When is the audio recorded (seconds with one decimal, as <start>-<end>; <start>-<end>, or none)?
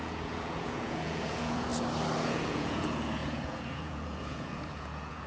1.7-2.2